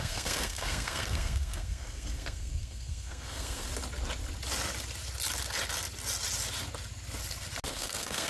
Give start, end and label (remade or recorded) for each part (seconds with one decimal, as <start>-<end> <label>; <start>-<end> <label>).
0.0-3.7 remade; 3.7-7.7 recorded; 7.7-8.3 remade